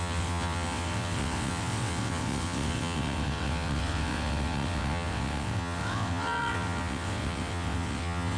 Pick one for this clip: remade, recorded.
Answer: remade